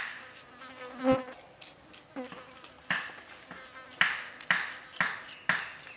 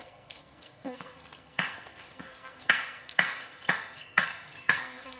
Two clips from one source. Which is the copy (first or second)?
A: second